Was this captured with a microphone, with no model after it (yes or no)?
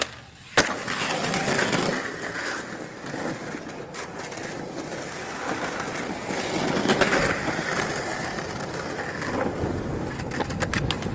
yes